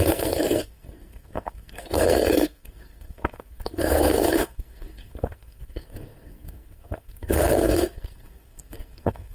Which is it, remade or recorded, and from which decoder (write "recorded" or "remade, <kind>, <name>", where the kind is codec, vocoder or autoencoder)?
remade, codec, SNAC